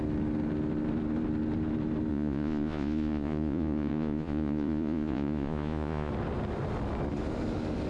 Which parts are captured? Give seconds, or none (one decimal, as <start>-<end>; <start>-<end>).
0.0-2.1; 6.1-7.9